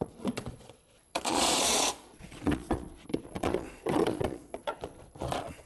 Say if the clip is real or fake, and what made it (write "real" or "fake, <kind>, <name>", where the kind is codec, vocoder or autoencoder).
fake, vocoder, Vocos